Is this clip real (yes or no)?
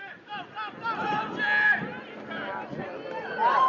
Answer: yes